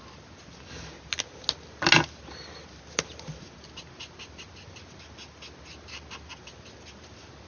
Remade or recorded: recorded